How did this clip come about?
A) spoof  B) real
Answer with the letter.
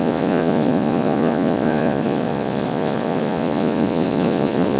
A